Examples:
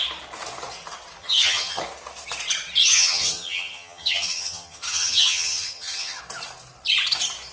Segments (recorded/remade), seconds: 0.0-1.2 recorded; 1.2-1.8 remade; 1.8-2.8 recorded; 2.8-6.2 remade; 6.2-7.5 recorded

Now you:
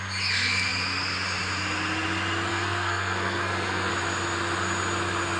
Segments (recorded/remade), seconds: 0.0-2.5 recorded; 2.5-3.9 remade; 3.9-5.4 recorded